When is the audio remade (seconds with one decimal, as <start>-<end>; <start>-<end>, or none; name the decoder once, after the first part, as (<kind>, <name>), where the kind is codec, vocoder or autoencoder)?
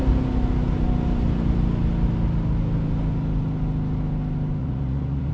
4.6-5.3 (vocoder, Vocos)